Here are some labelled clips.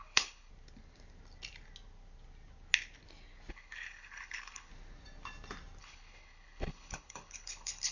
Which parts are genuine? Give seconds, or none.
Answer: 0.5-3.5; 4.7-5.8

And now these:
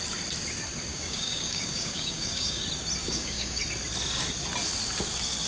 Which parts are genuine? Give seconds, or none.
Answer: 0.0-0.9; 2.6-3.0; 3.6-5.5